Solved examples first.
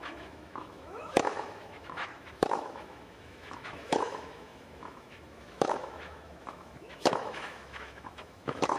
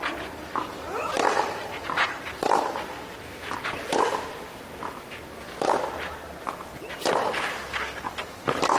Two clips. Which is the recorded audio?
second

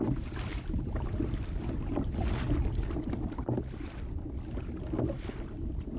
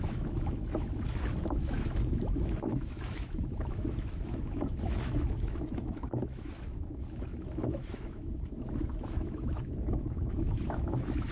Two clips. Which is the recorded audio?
first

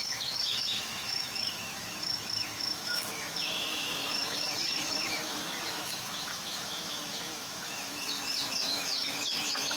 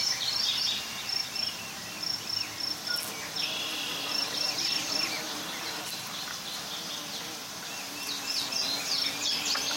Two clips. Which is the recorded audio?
second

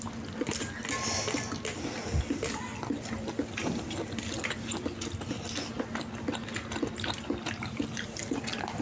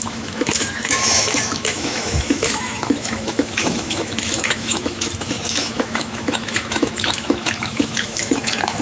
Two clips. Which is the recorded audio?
first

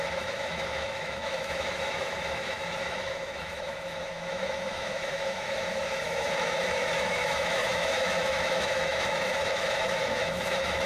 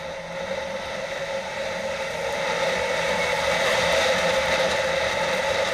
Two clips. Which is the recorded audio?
second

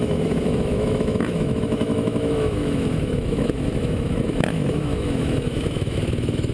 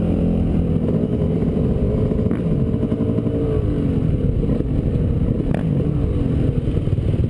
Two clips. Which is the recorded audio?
second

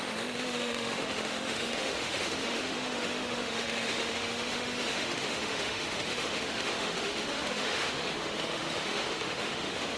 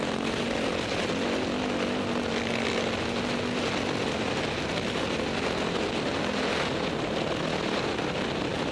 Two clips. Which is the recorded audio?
second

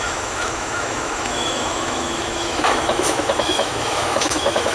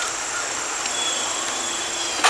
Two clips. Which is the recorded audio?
second